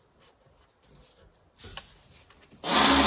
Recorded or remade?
recorded